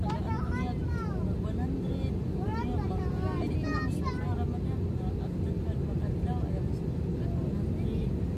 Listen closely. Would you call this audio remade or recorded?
recorded